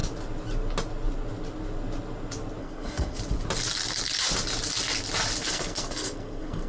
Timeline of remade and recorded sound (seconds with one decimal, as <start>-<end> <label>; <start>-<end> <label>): 0.0-2.6 recorded; 2.6-3.2 remade; 3.2-5.4 recorded; 5.4-6.7 remade